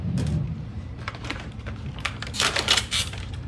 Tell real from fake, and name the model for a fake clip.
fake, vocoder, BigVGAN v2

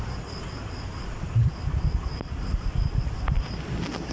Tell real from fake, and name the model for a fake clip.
real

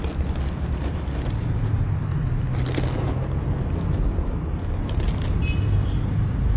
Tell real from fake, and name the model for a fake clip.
real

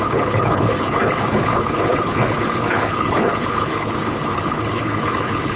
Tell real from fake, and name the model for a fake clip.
fake, codec, HILCodec